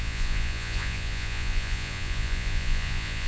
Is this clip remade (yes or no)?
yes